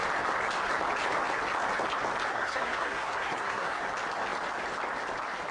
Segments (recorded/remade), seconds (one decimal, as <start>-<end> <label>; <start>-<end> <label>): 0.0-2.3 recorded; 2.3-3.8 remade; 3.8-5.5 recorded